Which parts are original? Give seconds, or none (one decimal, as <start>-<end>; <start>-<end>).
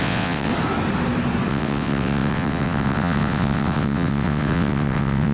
0.5-1.5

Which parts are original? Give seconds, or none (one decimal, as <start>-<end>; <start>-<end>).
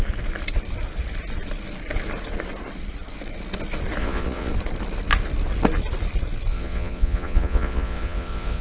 0.0-4.0; 4.5-6.5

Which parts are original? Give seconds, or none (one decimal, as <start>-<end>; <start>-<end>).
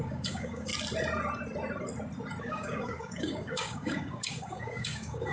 0.7-2.4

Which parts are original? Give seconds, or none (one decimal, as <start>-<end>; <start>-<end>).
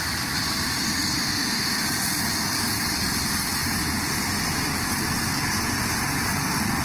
0.0-1.2; 1.8-6.8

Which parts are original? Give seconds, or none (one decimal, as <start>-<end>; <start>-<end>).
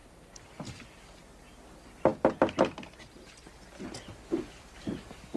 1.2-4.1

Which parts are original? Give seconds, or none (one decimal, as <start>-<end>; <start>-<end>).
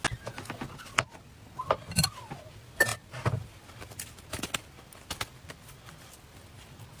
0.0-7.0